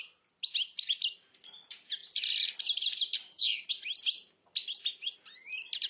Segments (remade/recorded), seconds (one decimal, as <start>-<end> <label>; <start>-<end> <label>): 0.0-5.9 recorded